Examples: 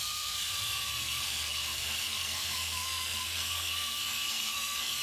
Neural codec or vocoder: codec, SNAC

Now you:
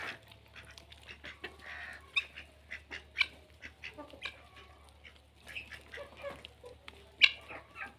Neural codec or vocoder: none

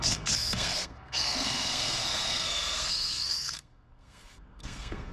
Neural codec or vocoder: codec, SNAC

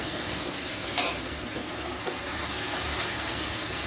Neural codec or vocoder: codec, SNAC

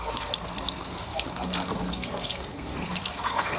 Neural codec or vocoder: codec, SNAC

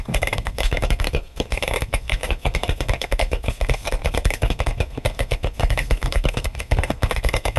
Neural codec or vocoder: codec, SNAC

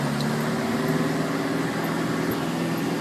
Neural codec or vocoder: none